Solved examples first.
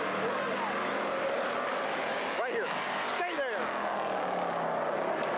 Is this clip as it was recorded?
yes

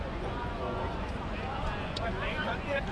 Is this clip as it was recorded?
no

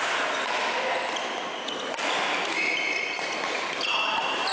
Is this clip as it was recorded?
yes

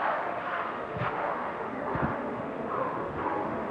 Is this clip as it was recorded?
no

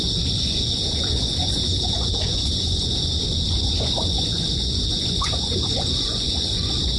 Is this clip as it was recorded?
no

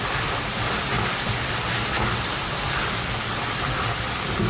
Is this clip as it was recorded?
yes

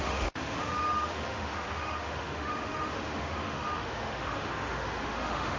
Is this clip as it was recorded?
no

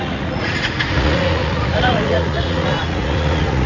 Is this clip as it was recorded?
no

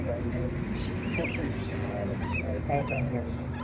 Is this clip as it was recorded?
yes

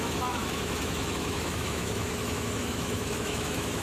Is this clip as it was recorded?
no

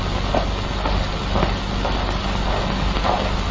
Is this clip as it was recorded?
yes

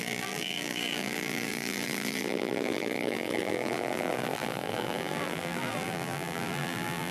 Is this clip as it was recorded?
no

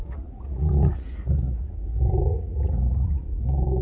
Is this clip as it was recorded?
no